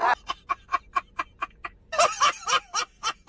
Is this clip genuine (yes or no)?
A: yes